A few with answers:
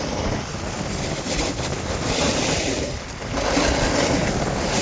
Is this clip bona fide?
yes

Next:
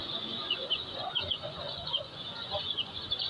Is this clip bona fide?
no